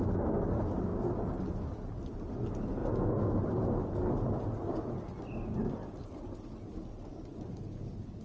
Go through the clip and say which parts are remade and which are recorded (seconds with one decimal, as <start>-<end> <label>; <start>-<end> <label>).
0.0-7.1 recorded; 7.1-8.2 remade